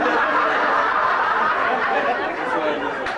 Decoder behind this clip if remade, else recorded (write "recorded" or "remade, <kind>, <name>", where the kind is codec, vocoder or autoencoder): recorded